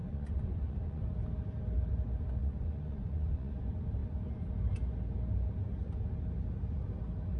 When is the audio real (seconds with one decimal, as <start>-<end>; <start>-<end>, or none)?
1.0-2.4; 3.5-7.4